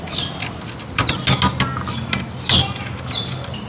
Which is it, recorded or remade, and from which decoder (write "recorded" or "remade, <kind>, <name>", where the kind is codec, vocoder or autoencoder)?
recorded